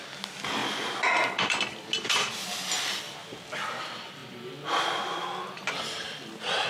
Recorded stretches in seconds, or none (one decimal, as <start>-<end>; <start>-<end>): 0.0-6.7